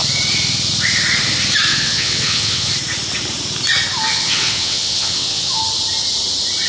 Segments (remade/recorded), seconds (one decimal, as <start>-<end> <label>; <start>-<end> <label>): 0.0-1.7 recorded; 1.7-2.7 remade; 2.7-4.1 recorded; 4.1-5.6 remade; 5.6-6.7 recorded